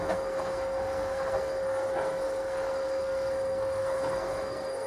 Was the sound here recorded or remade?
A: remade